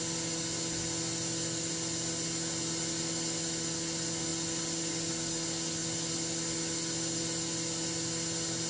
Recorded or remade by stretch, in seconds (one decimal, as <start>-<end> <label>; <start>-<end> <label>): 0.0-8.7 recorded